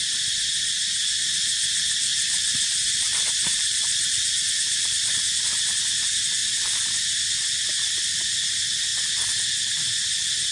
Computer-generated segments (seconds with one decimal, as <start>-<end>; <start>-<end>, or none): 2.1-5.1